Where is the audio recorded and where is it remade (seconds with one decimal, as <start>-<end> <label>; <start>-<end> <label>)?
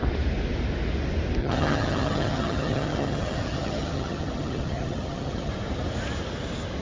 0.0-1.4 recorded; 1.4-5.5 remade; 5.5-6.8 recorded